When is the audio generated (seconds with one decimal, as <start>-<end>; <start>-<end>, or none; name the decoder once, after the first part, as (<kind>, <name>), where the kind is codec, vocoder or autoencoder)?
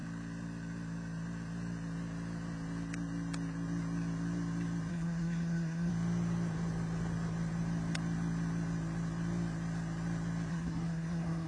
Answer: 4.9-5.9 (codec, SNAC); 10.5-11.5